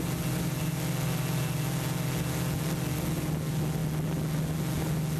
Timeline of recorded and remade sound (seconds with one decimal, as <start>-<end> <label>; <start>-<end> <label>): 0.0-5.2 recorded